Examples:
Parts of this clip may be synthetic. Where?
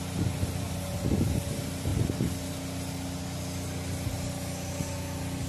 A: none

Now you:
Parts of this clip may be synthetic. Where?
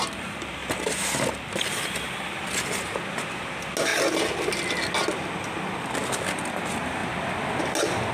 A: none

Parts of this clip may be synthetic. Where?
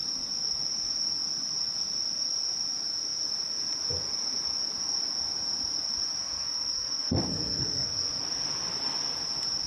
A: 6.2-8.2 (codec, SNAC)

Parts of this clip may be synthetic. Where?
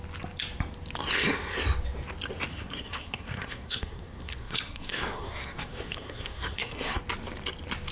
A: 2.5-6.9 (codec, SNAC)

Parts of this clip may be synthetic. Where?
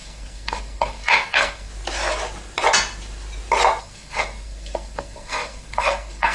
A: 0.0-1.7 (codec, SNAC); 3.8-6.3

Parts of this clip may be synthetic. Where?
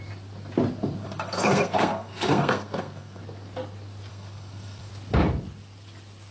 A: 1.0-3.2 (codec, SNAC); 4.1-4.9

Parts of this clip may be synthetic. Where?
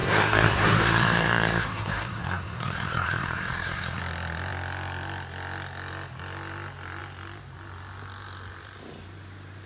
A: 0.0-4.0 (codec, SNAC)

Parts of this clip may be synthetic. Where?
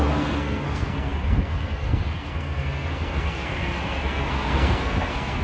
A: 0.0-5.4 (codec, SNAC)